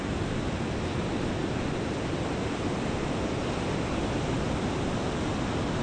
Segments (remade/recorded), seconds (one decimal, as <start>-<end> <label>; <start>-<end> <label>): 0.0-5.8 recorded